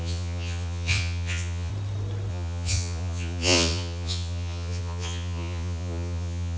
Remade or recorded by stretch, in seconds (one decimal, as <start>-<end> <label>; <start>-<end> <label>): 0.0-1.7 remade; 1.7-2.3 recorded; 2.3-6.6 remade